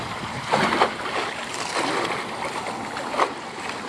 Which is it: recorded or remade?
recorded